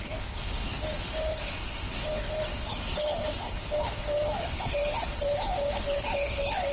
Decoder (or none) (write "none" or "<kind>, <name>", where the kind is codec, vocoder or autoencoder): codec, HILCodec